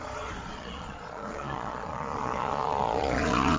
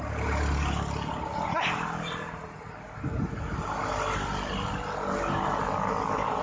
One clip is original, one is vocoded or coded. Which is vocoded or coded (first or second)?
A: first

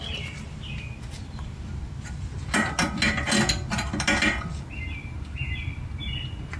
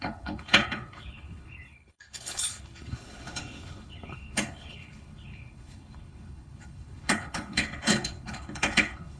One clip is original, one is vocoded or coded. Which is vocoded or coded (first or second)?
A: second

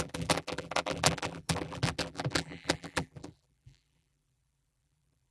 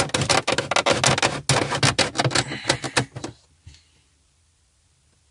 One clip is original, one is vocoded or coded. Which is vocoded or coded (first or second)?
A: first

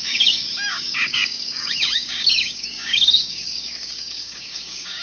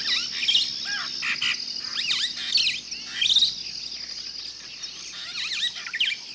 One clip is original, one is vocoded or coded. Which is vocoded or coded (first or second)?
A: first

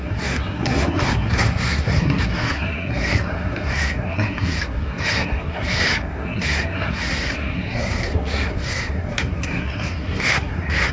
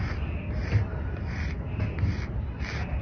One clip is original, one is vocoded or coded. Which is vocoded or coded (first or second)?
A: first